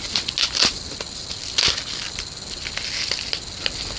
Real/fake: real